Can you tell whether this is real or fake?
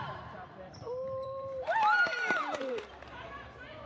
fake